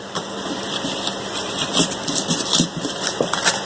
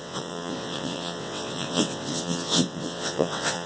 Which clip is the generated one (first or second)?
second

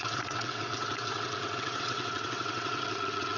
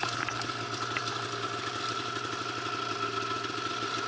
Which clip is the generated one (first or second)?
first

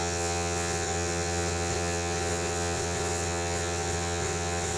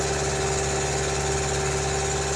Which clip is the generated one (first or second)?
first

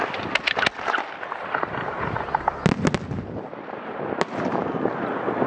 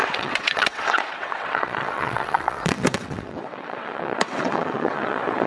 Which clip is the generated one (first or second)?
second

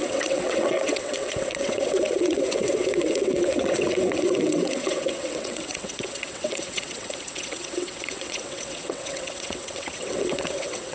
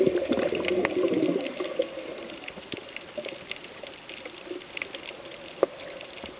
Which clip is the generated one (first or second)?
first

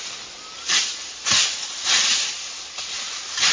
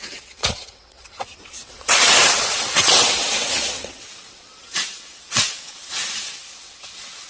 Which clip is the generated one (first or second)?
second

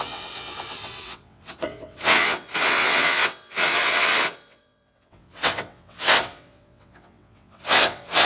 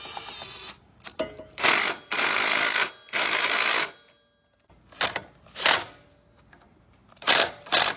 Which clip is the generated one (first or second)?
first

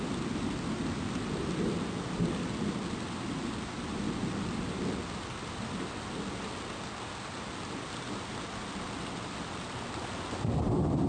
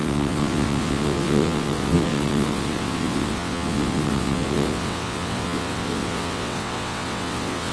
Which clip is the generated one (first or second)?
second